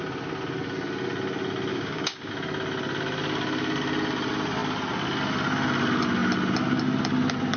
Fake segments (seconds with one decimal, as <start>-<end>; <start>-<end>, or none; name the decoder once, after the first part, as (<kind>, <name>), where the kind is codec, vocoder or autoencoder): 1.7-2.3 (codec, DAC)